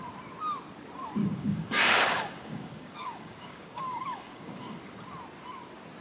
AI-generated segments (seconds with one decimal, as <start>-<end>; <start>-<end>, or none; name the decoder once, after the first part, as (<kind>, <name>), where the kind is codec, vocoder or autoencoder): 1.2-4.8 (codec, DAC)